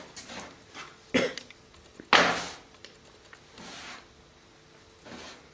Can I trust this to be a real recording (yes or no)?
yes